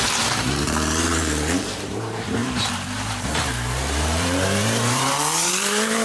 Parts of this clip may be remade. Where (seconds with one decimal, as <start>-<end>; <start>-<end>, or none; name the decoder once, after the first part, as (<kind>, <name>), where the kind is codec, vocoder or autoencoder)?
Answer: 0.0-2.4 (vocoder, BigVGAN v2); 3.0-6.0